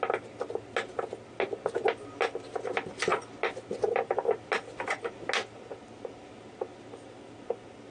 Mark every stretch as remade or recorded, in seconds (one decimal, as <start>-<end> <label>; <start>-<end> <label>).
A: 0.0-7.9 recorded

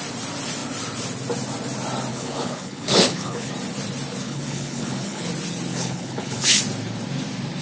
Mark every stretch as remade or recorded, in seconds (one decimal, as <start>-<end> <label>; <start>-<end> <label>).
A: 0.0-2.1 recorded; 2.1-3.5 remade; 3.5-4.2 recorded; 4.2-5.3 remade; 5.3-5.7 recorded; 5.7-6.6 remade; 6.6-7.6 recorded

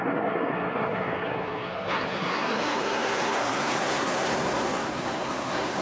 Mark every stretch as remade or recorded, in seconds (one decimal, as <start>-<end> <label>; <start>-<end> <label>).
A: 0.0-5.8 remade

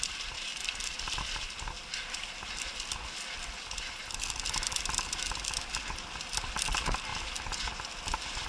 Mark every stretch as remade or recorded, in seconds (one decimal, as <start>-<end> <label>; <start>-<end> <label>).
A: 0.0-8.5 recorded

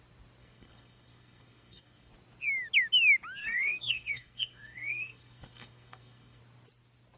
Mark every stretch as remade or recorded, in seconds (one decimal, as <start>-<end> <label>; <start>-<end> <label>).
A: 0.0-0.4 recorded; 0.4-2.1 remade; 2.1-3.4 recorded; 3.4-6.4 remade; 6.4-7.2 recorded

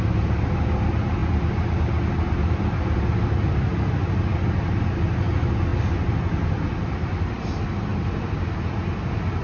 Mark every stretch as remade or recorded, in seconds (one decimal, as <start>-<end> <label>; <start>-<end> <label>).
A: 0.0-9.4 recorded

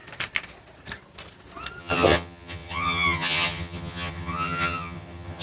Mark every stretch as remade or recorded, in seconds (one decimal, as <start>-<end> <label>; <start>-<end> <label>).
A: 0.0-1.8 recorded; 1.8-5.4 remade

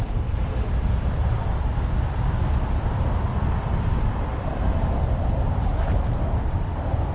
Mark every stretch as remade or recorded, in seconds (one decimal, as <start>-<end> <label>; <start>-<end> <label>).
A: 0.0-0.7 remade; 0.7-3.3 recorded; 3.3-4.6 remade; 4.6-7.1 recorded